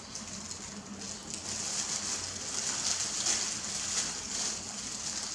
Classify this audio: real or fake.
real